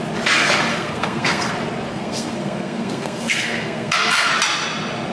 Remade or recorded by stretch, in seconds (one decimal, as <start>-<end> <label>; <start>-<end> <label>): 0.0-0.7 recorded; 0.7-1.5 remade; 1.5-1.9 recorded; 1.9-4.3 remade; 4.3-5.1 recorded